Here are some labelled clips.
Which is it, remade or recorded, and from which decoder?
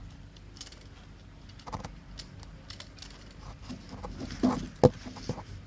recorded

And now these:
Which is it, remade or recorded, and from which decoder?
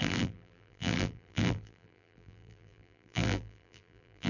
remade, vocoder, BigVGAN v2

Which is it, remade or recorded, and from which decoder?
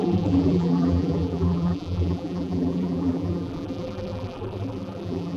remade, vocoder, BigVGAN v2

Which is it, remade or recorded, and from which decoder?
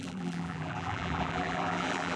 remade, vocoder, BigVGAN v2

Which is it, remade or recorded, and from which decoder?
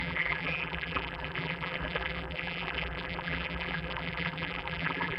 remade, vocoder, BigVGAN v2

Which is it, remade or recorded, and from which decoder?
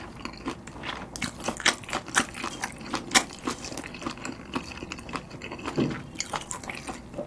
recorded